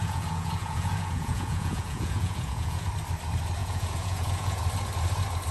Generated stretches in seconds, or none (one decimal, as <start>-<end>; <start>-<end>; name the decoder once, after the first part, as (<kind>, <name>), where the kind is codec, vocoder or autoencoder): 0.0-2.9 (vocoder, Vocos); 3.6-4.6